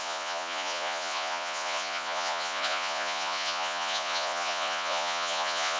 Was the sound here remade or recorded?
remade